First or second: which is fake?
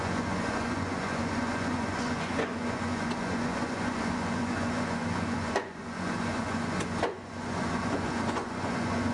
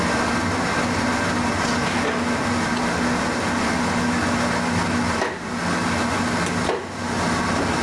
first